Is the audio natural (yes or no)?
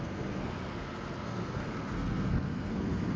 no